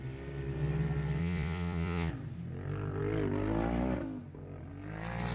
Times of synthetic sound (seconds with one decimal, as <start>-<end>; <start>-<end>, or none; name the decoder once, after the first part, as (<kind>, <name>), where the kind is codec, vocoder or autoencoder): 1.2-2.1 (vocoder, Vocos)